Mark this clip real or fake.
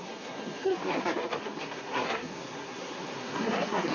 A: fake